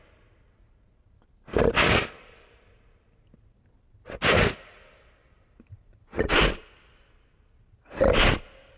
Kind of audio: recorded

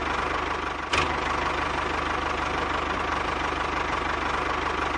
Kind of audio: recorded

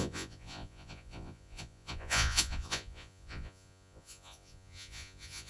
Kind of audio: remade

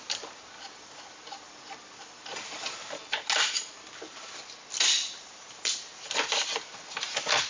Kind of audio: recorded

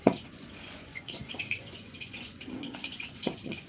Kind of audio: remade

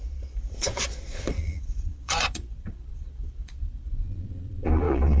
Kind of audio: remade